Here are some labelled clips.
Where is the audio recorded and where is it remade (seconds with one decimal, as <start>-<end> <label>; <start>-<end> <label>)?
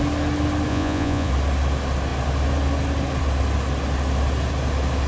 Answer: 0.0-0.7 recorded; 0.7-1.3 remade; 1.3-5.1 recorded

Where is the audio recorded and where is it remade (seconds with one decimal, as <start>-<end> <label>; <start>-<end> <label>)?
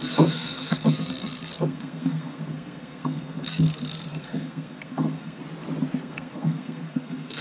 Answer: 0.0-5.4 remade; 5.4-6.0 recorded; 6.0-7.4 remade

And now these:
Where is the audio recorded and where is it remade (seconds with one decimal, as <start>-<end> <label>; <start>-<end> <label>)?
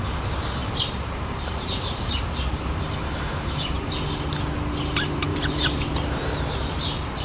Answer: 0.0-0.6 recorded; 0.6-3.9 remade; 3.9-5.3 recorded; 5.3-5.8 remade; 5.8-7.2 recorded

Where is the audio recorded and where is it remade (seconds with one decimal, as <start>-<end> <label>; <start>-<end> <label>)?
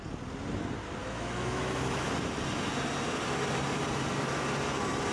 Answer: 0.0-1.0 recorded; 1.0-2.1 remade; 2.1-5.1 recorded